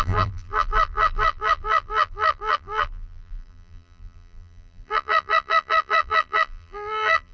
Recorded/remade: remade